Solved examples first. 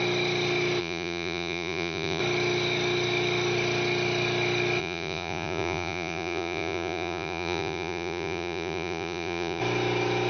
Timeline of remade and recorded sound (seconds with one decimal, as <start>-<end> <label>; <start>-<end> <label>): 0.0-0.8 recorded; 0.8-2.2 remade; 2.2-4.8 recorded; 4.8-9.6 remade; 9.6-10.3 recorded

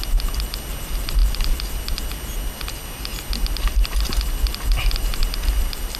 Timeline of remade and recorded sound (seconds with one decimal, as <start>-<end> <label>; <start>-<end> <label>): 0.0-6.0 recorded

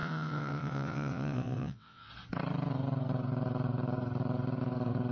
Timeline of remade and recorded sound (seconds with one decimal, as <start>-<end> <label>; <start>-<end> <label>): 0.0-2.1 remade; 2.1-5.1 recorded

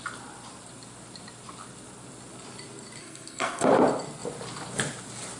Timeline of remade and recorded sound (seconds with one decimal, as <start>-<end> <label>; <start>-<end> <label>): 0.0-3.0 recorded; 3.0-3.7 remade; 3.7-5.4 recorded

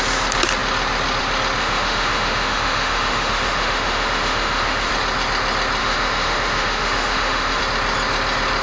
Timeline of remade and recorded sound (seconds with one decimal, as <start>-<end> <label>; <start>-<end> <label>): 0.0-1.6 recorded; 1.6-4.9 remade; 4.9-5.8 recorded; 5.8-7.6 remade; 7.6-8.6 recorded

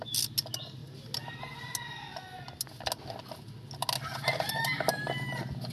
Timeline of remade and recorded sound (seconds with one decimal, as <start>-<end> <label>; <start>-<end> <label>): 0.0-5.7 recorded

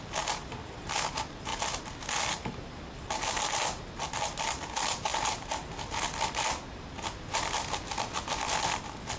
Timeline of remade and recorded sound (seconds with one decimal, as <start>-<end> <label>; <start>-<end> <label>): 0.0-9.2 recorded

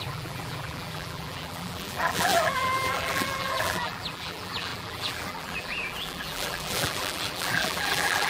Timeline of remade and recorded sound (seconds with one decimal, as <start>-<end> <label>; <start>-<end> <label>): 0.0-8.3 remade